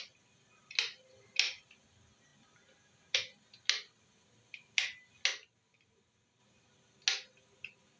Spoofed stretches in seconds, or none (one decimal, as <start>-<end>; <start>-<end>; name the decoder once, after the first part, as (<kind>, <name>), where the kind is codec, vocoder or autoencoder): none